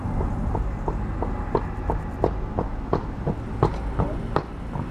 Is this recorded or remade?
recorded